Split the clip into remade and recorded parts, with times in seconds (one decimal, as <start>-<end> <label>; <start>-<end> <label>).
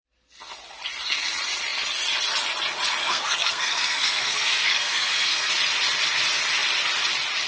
0.0-3.0 recorded; 3.0-5.5 remade; 5.5-7.5 recorded